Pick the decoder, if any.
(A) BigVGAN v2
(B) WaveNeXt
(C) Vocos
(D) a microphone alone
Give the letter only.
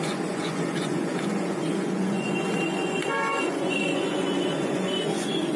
C